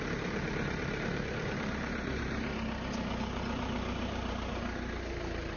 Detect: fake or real fake